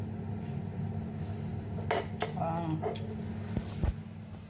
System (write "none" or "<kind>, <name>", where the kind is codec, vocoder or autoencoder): none